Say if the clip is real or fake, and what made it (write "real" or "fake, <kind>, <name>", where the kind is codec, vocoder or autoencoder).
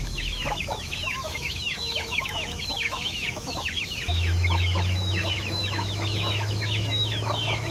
fake, autoencoder, DAC-VAE